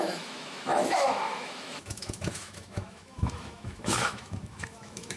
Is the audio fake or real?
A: fake